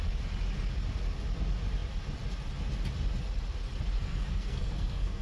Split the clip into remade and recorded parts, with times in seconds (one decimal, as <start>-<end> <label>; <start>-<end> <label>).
0.0-4.0 recorded; 4.0-5.2 remade